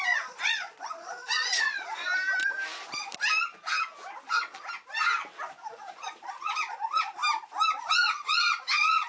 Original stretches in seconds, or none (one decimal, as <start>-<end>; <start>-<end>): 2.1-5.9; 7.2-7.8